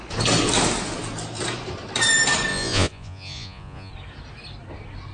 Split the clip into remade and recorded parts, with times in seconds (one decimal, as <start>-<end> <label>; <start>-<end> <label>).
0.0-2.5 recorded; 2.5-3.9 remade; 3.9-5.1 recorded